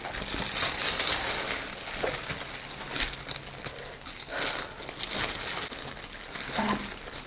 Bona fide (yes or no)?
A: yes